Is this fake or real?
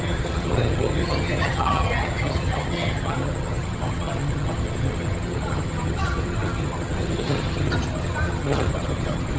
fake